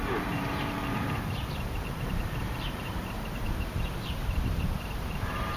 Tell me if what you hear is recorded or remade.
remade